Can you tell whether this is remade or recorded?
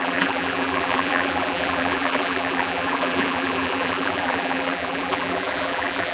remade